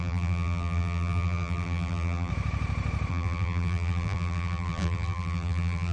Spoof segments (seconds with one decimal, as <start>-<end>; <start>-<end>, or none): 0.0-2.3; 3.1-5.9